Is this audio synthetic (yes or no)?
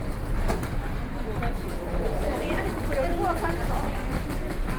no